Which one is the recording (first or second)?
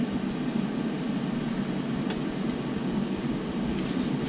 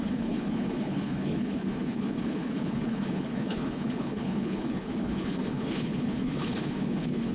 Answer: first